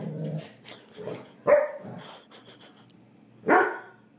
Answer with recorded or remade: recorded